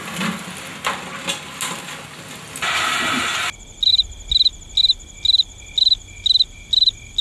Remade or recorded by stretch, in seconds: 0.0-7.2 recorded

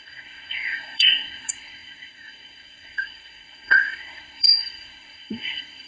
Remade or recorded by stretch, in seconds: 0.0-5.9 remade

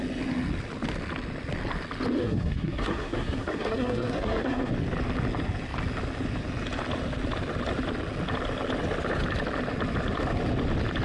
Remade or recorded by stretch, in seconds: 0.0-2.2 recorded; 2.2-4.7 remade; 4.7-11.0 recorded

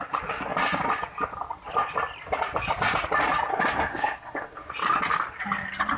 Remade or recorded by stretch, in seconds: 0.0-3.5 recorded; 3.5-4.7 remade; 4.7-6.0 recorded